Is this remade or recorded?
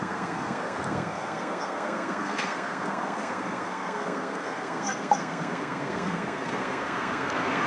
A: remade